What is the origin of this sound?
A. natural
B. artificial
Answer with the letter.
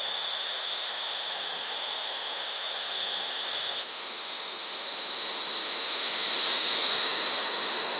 B